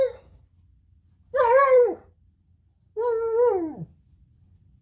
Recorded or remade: recorded